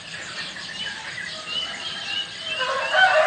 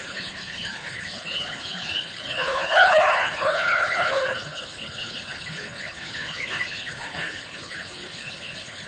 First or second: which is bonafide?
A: first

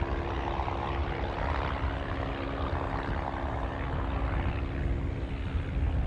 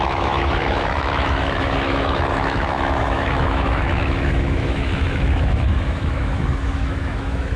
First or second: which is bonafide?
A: first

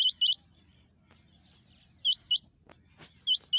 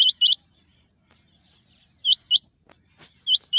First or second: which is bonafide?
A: first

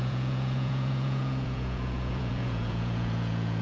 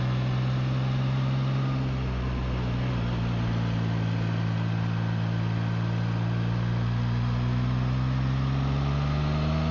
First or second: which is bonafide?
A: second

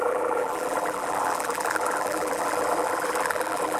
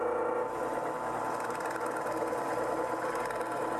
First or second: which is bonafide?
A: second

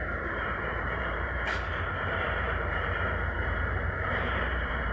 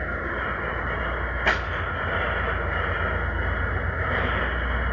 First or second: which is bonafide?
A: second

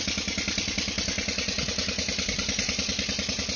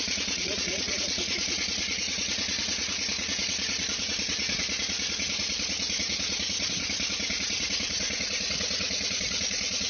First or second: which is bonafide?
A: first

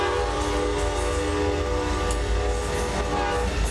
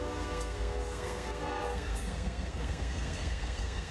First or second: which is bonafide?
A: first